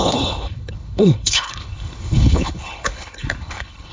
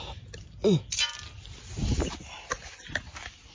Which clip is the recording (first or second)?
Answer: second